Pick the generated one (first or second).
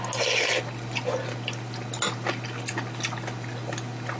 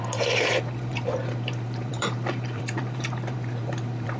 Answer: second